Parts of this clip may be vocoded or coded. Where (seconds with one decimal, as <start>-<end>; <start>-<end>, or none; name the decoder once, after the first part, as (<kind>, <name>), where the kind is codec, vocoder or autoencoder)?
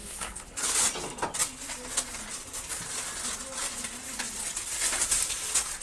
0.0-0.7 (codec, HILCodec)